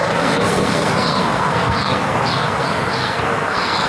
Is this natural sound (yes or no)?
no